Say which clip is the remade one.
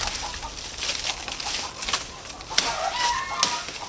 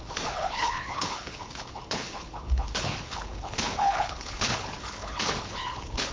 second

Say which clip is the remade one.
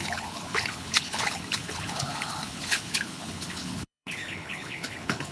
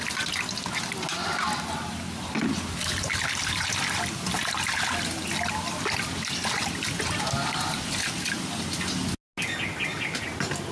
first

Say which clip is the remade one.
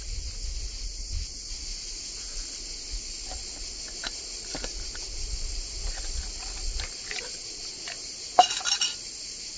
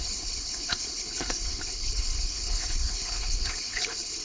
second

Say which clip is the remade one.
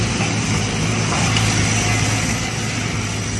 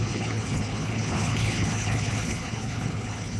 second